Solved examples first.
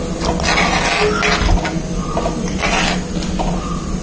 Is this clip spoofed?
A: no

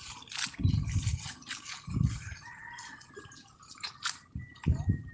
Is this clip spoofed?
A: no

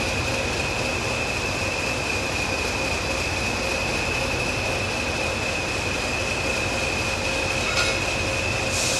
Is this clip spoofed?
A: no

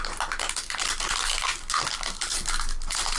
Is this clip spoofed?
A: no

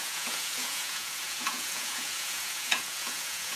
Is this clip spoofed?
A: yes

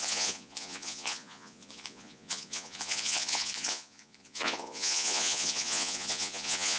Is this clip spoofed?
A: yes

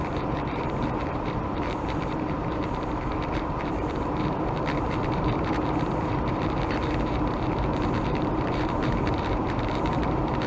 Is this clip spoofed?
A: yes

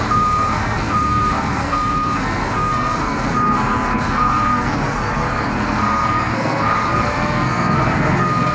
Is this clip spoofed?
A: yes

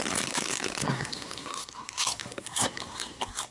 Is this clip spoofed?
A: yes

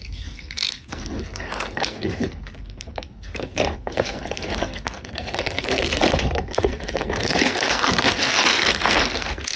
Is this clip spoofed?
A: yes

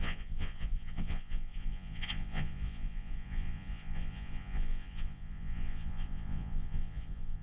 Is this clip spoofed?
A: yes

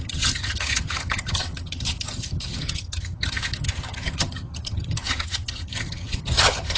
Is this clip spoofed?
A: yes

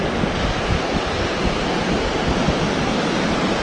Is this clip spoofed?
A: no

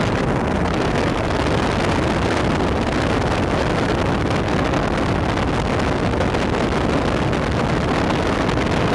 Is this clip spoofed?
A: no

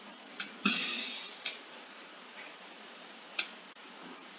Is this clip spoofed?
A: yes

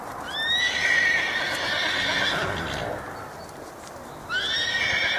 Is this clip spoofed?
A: no